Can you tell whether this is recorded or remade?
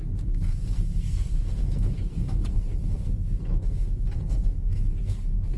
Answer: remade